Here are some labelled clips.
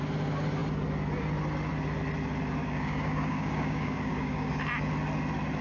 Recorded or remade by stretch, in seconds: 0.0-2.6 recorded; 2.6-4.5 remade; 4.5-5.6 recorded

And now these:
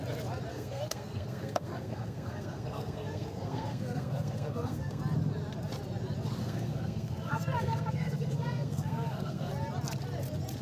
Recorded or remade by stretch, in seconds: 0.0-0.5 recorded; 0.5-5.0 remade; 5.0-6.4 recorded; 6.4-9.5 remade; 9.5-10.6 recorded

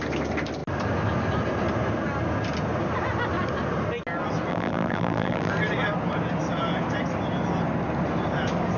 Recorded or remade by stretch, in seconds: 0.0-4.5 recorded; 4.5-5.5 remade; 5.5-8.8 recorded

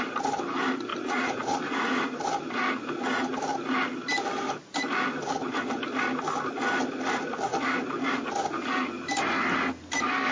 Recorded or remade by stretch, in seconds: 0.0-0.9 recorded; 0.9-2.0 remade; 2.0-10.3 recorded

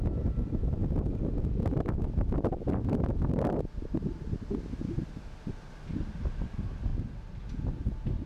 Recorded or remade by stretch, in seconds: 0.0-0.8 recorded; 0.8-4.6 remade; 4.6-8.3 recorded

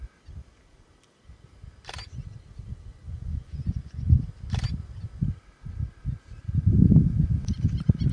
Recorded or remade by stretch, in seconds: 0.0-3.0 recorded; 3.0-4.2 remade; 4.2-8.1 recorded

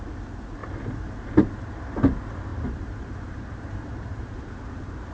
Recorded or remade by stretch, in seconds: 0.0-0.6 recorded; 0.6-1.3 remade; 1.3-2.5 recorded; 2.5-4.5 remade; 4.5-5.1 recorded